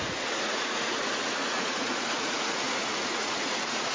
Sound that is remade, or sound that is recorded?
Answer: remade